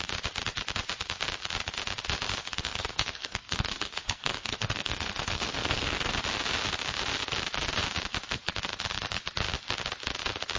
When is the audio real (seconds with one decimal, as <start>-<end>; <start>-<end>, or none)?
0.0-2.4; 6.1-10.6